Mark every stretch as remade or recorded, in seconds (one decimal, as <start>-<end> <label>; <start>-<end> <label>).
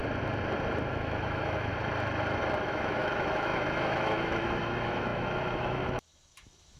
0.0-0.9 recorded; 0.9-1.7 remade; 1.7-2.6 recorded; 2.6-6.8 remade